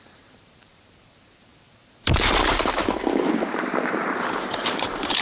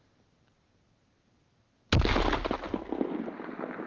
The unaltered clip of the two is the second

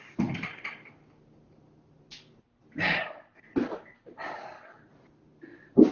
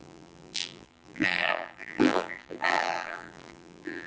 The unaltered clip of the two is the first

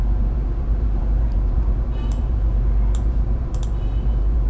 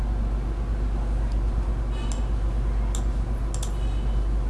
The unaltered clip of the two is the second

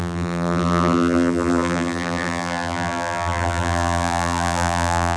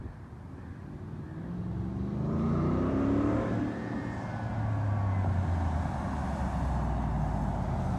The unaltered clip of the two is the second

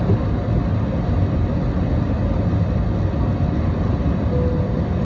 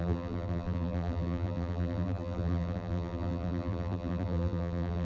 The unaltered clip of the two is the first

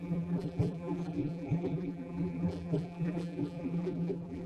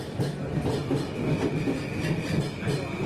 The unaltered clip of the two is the second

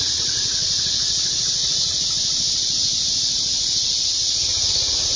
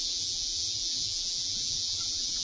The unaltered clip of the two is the first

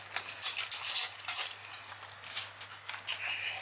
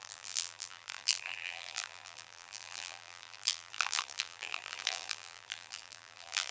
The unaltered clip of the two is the first